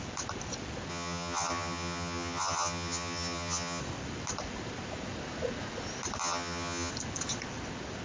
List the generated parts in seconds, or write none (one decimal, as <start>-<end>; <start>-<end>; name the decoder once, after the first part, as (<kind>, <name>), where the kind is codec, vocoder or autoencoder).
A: 0.9-3.8 (vocoder, HiFi-GAN); 6.2-6.9